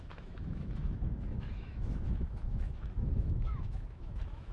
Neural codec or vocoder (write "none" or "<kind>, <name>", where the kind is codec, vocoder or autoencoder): autoencoder, DAC-VAE